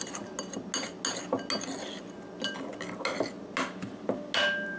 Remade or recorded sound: recorded